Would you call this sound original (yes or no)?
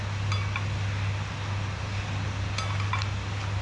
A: yes